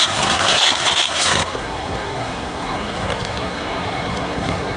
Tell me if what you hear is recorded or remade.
remade